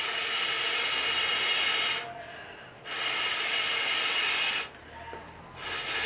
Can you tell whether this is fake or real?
real